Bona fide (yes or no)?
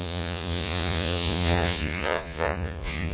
no